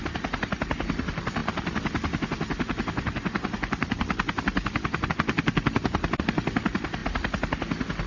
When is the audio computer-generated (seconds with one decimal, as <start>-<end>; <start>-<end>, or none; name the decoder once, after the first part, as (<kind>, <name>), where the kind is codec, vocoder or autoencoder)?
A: none